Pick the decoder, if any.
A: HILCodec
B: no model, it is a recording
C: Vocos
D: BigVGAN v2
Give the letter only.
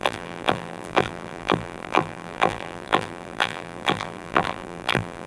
D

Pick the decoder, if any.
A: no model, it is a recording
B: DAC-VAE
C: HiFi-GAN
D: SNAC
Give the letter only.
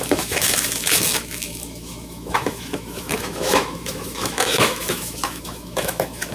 B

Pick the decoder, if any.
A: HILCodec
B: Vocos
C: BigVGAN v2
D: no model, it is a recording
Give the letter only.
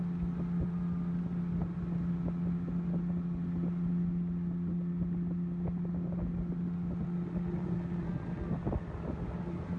D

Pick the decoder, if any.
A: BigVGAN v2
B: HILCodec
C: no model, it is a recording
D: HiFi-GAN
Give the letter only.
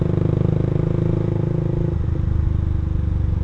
C